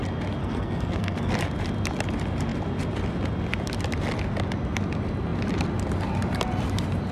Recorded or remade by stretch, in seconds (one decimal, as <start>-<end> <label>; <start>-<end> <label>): 0.0-0.4 recorded; 0.4-1.3 remade; 1.3-7.1 recorded